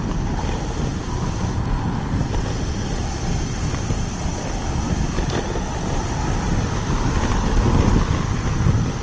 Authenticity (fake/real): real